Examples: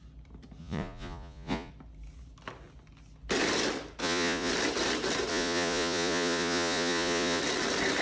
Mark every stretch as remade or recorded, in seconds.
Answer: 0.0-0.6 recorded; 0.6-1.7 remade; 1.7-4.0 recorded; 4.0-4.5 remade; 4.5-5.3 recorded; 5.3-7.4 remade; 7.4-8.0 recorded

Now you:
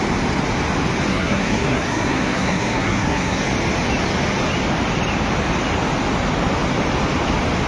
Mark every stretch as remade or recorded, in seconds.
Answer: 0.0-1.1 recorded; 1.1-3.4 remade; 3.4-7.7 recorded

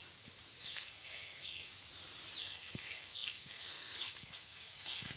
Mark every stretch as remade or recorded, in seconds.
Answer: 0.0-0.6 recorded; 0.6-1.7 remade; 1.7-2.4 recorded; 2.4-5.2 remade

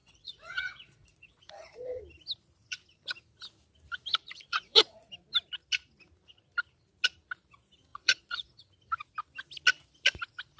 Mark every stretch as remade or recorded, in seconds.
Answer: 0.0-2.0 remade; 2.0-4.2 recorded; 4.2-5.1 remade; 5.1-7.9 recorded; 7.9-8.6 remade; 8.6-10.6 recorded

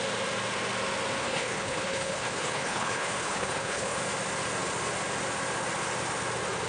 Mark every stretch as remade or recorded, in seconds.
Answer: 0.0-1.2 recorded; 1.2-4.0 remade; 4.0-6.7 recorded

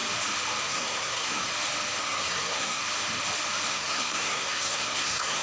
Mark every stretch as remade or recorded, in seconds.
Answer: 0.0-0.6 recorded; 0.6-1.5 remade; 1.5-2.0 recorded; 2.0-2.8 remade; 2.8-3.7 recorded; 3.7-5.4 remade

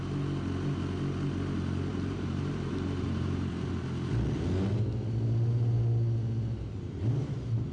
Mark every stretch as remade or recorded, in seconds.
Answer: 0.0-1.9 recorded; 1.9-3.5 remade; 3.5-7.7 recorded

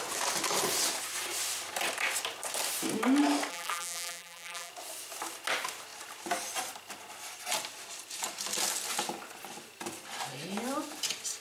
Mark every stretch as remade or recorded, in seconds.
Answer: 0.0-3.5 recorded; 3.5-4.7 remade; 4.7-11.4 recorded